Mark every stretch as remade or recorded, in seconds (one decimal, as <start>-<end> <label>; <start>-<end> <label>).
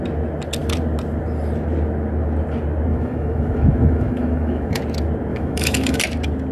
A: 0.0-2.9 recorded; 2.9-4.8 remade; 4.8-5.3 recorded; 5.3-6.0 remade; 6.0-6.5 recorded